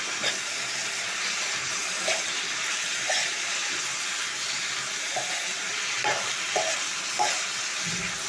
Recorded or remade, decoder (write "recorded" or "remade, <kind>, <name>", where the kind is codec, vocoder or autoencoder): recorded